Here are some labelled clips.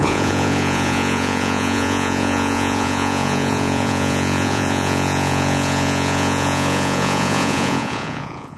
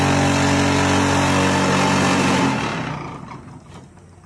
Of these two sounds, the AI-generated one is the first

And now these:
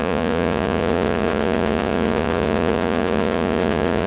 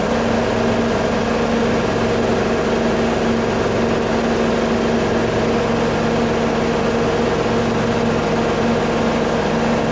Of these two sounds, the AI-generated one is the first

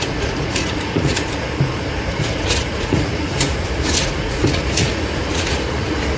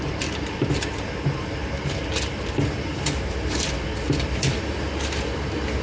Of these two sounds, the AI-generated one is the first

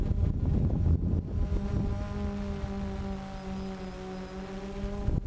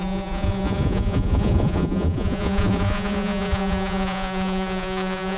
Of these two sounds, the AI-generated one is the second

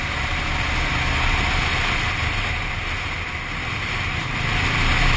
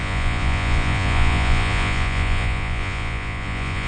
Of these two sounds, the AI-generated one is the second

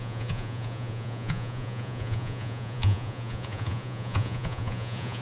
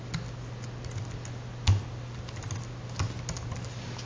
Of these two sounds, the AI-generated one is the first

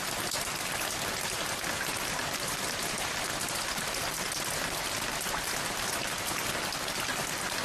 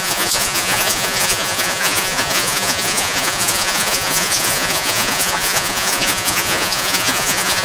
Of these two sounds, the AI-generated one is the second